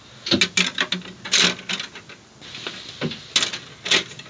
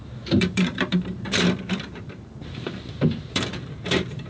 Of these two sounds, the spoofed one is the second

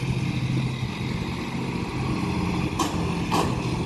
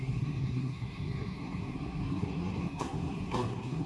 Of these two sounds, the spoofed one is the second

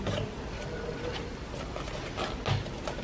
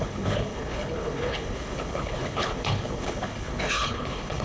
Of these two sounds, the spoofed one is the second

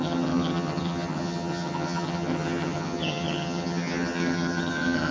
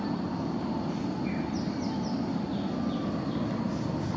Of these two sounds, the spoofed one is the first